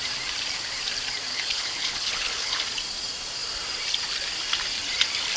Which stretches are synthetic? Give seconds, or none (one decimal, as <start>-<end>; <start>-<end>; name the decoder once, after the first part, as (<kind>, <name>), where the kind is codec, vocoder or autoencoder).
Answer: 1.3-2.6 (codec, HILCodec)